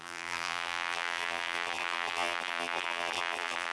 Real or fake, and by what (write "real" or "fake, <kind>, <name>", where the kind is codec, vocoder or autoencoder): fake, vocoder, BigVGAN v2